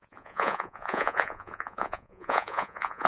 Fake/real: fake